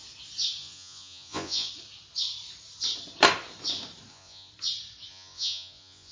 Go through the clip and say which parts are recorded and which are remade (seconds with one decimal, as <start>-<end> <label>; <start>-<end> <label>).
0.0-0.6 recorded; 0.6-1.7 remade; 1.7-4.1 recorded; 4.1-4.5 remade; 4.5-5.1 recorded; 5.1-6.1 remade